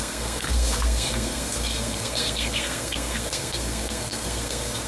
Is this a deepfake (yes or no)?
yes